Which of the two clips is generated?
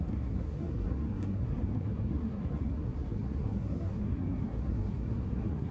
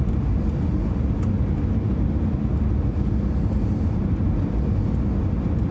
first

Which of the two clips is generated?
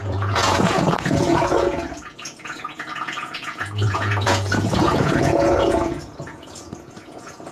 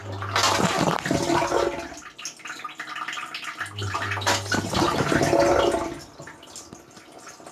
first